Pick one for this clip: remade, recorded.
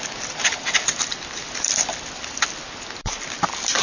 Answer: recorded